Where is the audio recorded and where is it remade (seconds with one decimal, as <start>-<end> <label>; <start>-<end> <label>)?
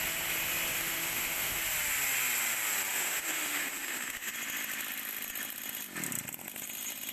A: 0.0-0.7 recorded; 0.7-1.6 remade; 1.6-2.9 recorded; 2.9-4.3 remade; 4.3-7.1 recorded